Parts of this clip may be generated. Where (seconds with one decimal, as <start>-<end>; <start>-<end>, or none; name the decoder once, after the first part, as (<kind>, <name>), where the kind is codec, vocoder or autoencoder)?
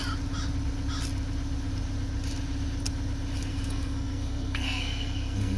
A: 3.5-5.6 (codec, SNAC)